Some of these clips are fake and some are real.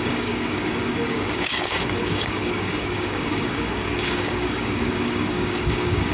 fake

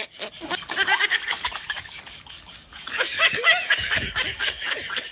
fake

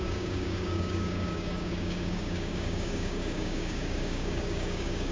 fake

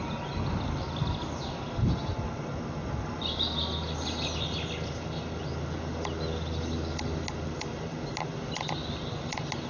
real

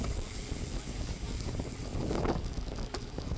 fake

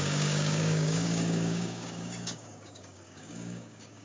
fake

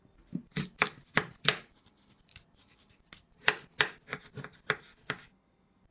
real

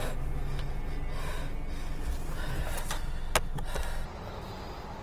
real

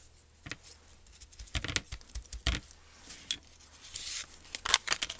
real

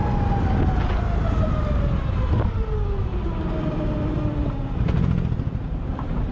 real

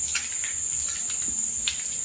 real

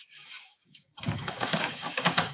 fake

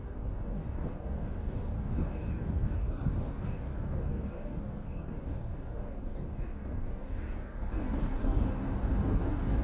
fake